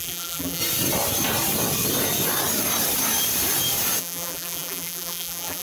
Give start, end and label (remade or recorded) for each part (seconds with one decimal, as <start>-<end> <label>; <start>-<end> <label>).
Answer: 0.0-0.6 remade; 0.6-4.0 recorded; 4.0-5.6 remade